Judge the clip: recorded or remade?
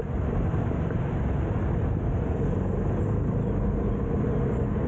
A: recorded